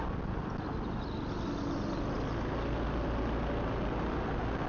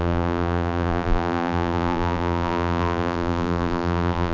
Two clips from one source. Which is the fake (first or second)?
second